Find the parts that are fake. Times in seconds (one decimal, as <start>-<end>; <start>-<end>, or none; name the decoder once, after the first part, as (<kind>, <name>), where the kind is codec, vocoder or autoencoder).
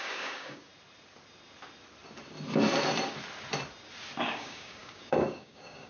0.0-0.7 (codec, DAC); 4.2-5.9